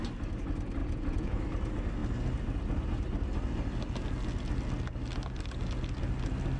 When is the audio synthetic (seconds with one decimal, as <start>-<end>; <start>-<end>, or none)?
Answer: 0.8-1.4